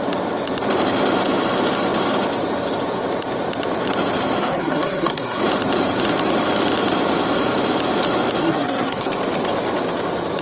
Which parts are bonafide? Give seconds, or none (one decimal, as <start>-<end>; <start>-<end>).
0.0-4.4; 5.4-8.4; 9.1-10.4